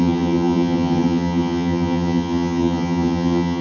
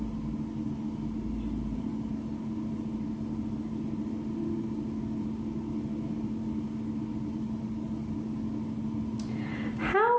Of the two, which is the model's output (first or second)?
first